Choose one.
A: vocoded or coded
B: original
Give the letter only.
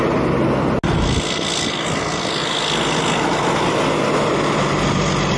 B